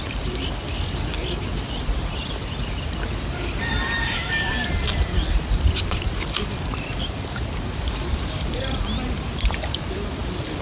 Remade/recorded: remade